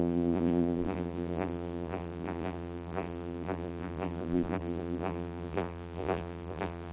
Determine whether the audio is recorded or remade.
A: remade